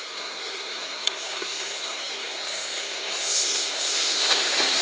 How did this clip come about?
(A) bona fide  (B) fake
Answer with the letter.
B